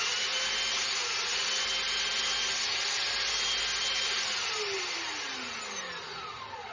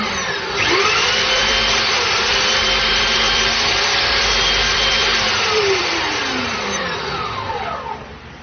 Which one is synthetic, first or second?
second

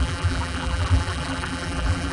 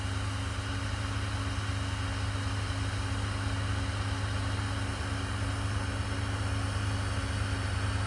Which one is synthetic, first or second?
first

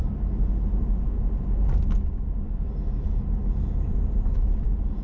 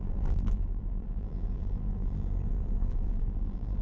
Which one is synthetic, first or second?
second